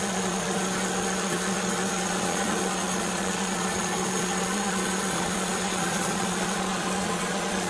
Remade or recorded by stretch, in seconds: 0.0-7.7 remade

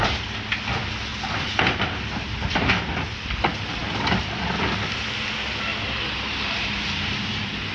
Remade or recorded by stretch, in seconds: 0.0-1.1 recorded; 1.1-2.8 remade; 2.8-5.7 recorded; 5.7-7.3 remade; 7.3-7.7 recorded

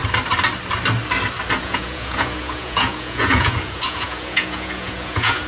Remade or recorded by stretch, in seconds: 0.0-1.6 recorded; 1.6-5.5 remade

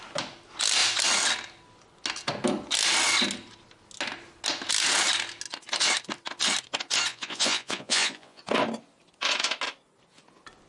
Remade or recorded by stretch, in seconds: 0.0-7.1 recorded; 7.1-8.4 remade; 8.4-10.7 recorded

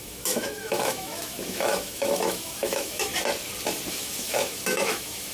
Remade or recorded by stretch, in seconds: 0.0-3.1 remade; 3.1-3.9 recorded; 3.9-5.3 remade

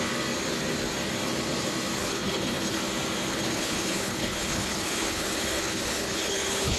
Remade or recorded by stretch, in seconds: 0.0-2.0 recorded; 2.0-2.8 remade; 2.8-3.3 recorded; 3.3-6.8 remade